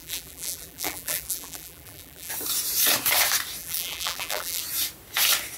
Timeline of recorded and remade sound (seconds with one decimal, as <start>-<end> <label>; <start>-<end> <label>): 0.0-2.3 remade; 2.3-3.6 recorded; 3.6-4.6 remade; 4.6-5.6 recorded